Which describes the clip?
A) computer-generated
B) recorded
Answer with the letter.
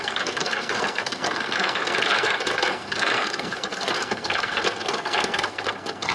A